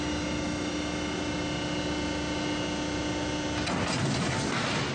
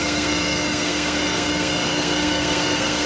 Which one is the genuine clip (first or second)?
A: first